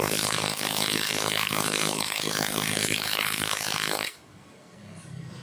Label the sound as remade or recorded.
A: remade